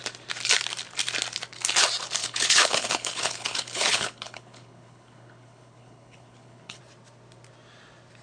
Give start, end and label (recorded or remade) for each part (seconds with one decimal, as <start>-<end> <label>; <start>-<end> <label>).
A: 0.0-2.2 recorded; 2.2-6.8 remade; 6.8-8.2 recorded

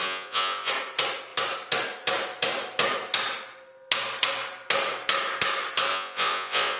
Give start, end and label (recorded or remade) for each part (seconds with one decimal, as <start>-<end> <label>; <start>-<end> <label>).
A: 0.0-0.7 remade; 0.7-5.9 recorded; 5.9-6.8 remade

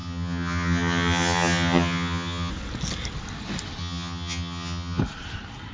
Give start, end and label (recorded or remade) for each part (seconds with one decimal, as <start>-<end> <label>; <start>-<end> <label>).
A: 0.0-2.5 remade; 2.5-3.8 recorded; 3.8-5.0 remade; 5.0-5.7 recorded

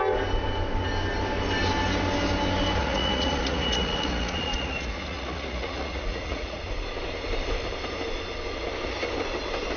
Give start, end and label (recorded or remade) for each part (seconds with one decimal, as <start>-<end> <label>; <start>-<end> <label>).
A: 0.0-2.8 recorded; 2.8-6.6 remade; 6.6-9.8 recorded